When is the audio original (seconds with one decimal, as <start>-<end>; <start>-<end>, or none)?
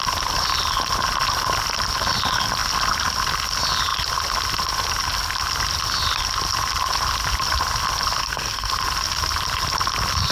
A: 0.0-8.2; 8.7-10.3